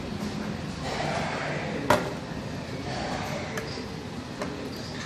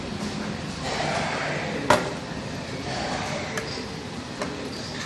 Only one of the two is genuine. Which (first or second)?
first